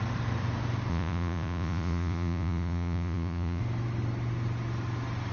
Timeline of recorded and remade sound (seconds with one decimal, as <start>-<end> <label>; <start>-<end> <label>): 0.0-0.9 recorded; 0.9-3.6 remade; 3.6-5.3 recorded